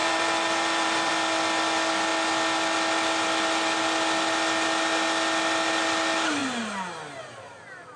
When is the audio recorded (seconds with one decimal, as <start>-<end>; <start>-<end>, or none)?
1.1-8.0